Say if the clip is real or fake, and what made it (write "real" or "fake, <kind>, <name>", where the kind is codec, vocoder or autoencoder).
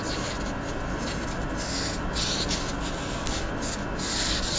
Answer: real